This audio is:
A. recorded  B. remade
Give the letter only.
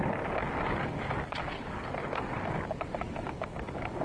B